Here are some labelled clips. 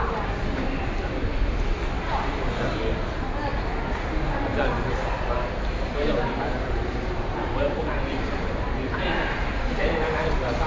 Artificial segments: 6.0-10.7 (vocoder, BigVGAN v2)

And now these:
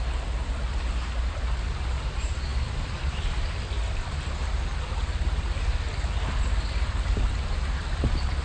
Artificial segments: 0.0-8.4 (vocoder, BigVGAN v2)

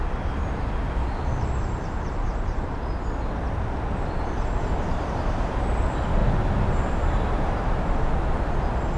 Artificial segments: 0.4-2.8 (vocoder, BigVGAN v2); 6.2-7.8

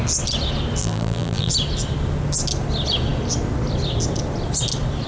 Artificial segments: 0.8-1.5 (vocoder, BigVGAN v2)

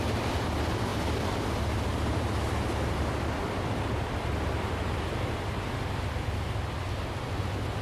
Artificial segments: 0.0-7.8 (vocoder, BigVGAN v2)

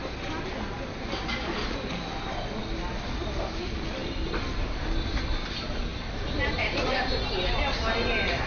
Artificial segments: 4.0-5.5 (vocoder, BigVGAN v2); 5.9-7.3